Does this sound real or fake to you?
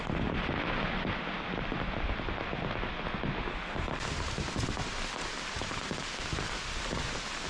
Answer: real